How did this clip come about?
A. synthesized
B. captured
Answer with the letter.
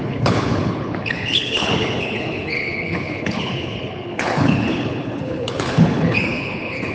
A